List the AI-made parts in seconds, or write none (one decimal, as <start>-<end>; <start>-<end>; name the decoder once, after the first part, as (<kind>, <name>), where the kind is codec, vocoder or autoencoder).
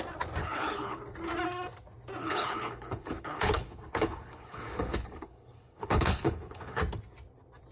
0.4-1.0 (codec, HILCodec); 2.2-6.8